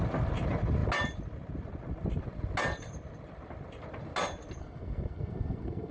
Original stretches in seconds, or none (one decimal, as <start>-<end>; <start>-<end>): 0.0-4.6